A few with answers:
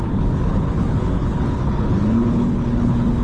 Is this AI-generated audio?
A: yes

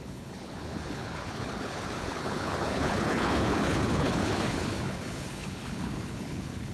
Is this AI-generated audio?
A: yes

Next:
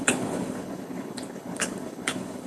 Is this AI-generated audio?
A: yes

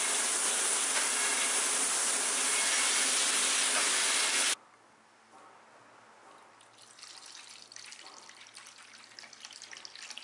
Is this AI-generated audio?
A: no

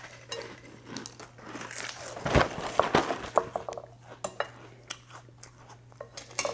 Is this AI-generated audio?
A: no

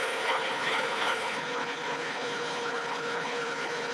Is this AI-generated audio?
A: yes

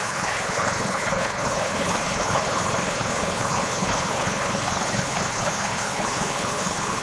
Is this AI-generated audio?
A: yes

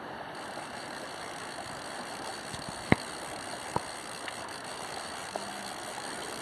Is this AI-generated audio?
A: no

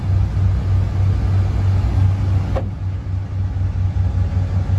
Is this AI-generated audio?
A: no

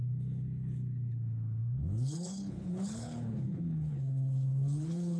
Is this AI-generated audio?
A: yes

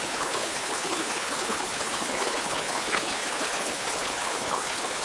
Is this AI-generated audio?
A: yes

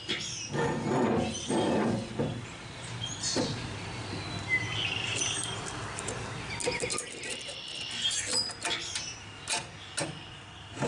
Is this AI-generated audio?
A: no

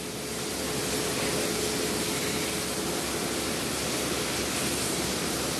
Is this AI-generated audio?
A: no